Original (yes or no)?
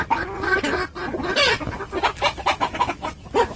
yes